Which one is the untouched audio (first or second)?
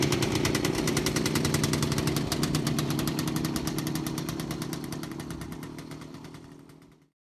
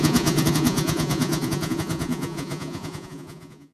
first